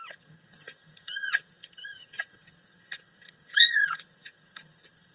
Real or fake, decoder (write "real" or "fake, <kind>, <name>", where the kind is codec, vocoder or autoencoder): fake, vocoder, HiFi-GAN